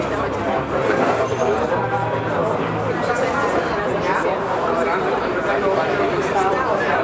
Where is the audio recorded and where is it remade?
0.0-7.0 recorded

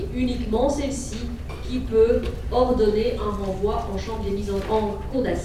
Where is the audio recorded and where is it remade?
0.0-5.4 recorded

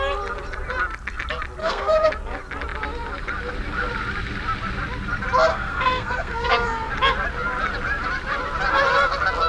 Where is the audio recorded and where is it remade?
0.0-1.6 recorded; 1.6-2.1 remade; 2.1-5.5 recorded; 5.5-6.9 remade; 6.9-9.5 recorded